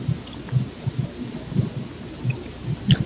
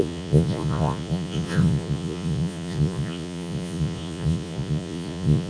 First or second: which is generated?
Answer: second